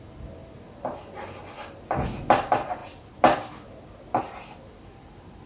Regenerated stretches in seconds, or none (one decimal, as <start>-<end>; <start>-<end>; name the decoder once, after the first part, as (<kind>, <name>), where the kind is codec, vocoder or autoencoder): 0.4-1.2 (vocoder, BigVGAN v2)